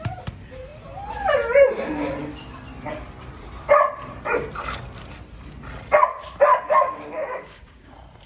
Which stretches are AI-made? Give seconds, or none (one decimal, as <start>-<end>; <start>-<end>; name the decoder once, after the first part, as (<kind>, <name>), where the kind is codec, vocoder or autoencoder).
6.5-7.9 (codec, DAC)